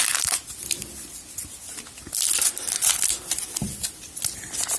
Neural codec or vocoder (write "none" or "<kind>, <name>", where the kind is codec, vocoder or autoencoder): none